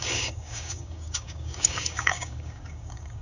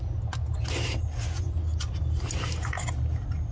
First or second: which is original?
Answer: second